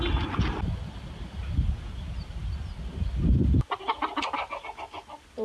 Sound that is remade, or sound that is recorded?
recorded